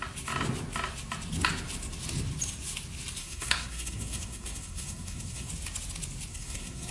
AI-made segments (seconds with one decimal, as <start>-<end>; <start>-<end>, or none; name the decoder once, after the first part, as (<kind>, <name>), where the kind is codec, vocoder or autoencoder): 3.2-5.5 (codec, SNAC); 6.3-6.9